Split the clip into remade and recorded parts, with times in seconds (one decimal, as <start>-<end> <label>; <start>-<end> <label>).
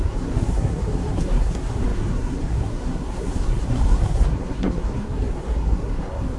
0.0-6.4 remade